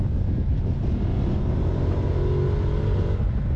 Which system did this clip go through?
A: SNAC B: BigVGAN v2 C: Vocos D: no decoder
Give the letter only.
D